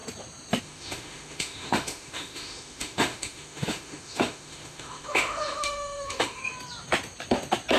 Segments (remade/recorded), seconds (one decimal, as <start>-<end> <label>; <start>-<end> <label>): 0.0-0.6 recorded; 0.6-6.4 remade; 6.4-7.8 recorded